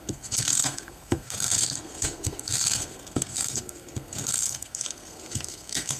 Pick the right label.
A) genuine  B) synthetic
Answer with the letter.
B